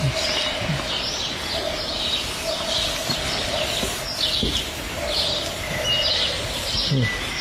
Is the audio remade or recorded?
recorded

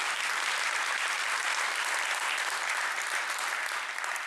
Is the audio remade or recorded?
recorded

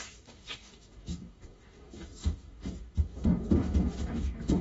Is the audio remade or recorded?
remade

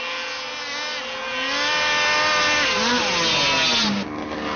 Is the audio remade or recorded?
recorded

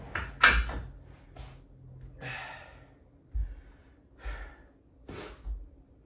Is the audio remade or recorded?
recorded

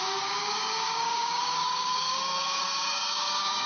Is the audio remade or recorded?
remade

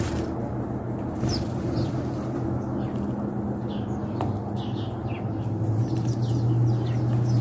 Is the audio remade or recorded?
recorded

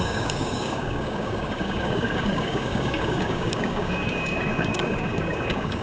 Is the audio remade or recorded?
remade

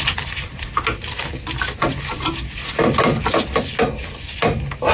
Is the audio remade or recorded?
recorded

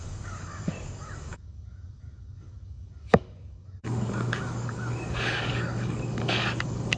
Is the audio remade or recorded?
remade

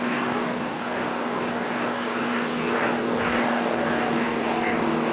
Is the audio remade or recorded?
remade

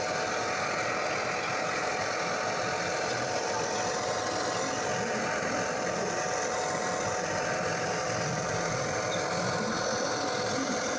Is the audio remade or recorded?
recorded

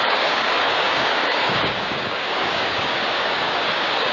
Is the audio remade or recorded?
remade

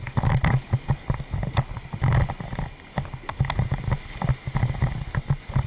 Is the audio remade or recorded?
recorded